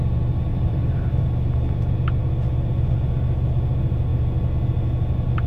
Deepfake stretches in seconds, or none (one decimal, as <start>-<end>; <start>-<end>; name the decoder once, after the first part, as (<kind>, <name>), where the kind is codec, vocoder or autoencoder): 0.5-1.3 (vocoder, BigVGAN v2)